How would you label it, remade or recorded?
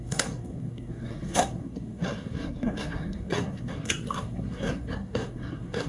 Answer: remade